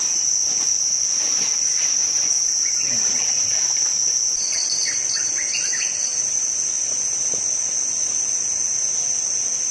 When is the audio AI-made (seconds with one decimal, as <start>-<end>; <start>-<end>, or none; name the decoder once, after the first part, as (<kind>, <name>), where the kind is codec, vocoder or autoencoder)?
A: 2.0-2.9 (vocoder, BigVGAN v2)